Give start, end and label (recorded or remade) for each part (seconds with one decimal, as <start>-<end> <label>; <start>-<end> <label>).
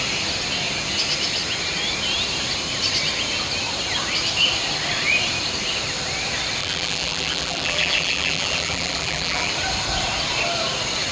0.0-6.6 recorded; 6.6-9.5 remade; 9.5-11.1 recorded